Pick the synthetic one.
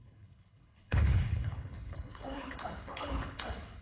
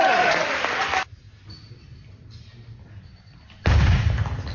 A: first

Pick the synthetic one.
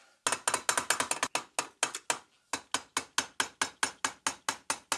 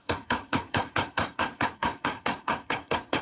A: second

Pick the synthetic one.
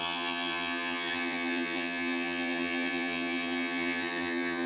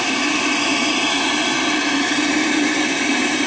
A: first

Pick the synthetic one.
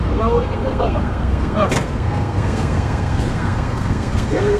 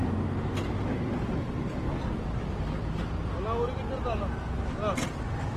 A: first